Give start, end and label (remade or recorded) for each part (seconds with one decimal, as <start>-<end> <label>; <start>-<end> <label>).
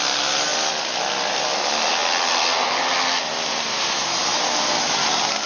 0.0-5.5 recorded